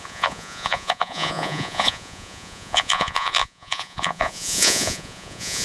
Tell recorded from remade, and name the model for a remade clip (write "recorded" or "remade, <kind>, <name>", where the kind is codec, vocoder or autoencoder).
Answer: remade, vocoder, Vocos